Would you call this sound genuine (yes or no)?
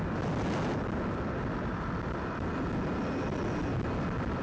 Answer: yes